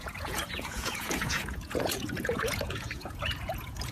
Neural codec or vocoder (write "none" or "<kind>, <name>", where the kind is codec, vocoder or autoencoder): vocoder, Vocos